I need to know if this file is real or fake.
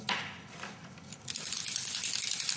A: real